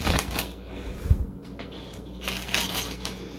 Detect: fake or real fake